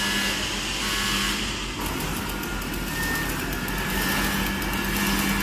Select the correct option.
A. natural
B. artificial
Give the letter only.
A